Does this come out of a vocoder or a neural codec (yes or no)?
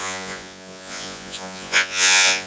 yes